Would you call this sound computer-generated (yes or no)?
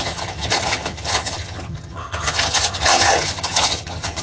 yes